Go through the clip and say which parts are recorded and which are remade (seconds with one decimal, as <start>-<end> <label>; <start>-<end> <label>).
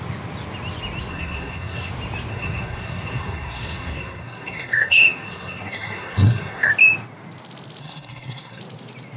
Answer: 0.0-1.1 recorded; 1.1-1.9 remade; 1.9-2.3 recorded; 2.3-6.7 remade; 6.7-7.8 recorded; 7.8-8.6 remade; 8.6-9.2 recorded